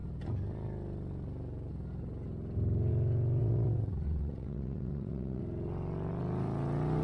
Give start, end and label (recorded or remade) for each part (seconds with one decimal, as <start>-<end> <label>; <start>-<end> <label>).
0.0-3.4 recorded; 3.4-5.4 remade; 5.4-7.0 recorded